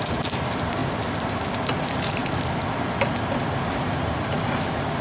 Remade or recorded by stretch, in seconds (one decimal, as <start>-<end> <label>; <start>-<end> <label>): 0.0-2.2 remade; 2.2-4.1 recorded; 4.1-5.0 remade